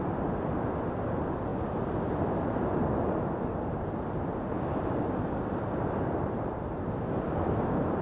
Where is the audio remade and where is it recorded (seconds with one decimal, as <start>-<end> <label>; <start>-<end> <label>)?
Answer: 0.0-8.0 recorded